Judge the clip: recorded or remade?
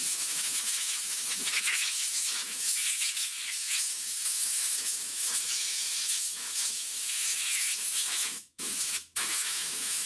remade